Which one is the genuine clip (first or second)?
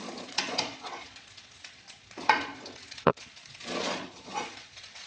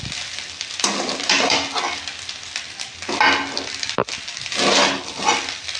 second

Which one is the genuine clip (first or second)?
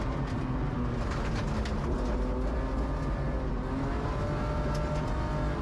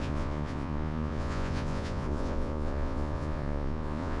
first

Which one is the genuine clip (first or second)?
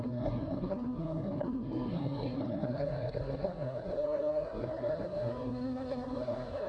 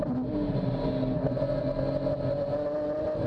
second